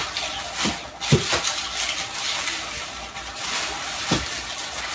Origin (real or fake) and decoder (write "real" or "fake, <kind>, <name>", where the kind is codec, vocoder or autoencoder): real